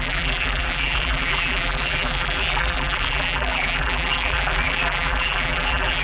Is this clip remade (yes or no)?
yes